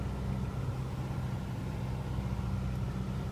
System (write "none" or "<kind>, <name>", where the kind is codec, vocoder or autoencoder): none